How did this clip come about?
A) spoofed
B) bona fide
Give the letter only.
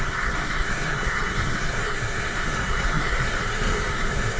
A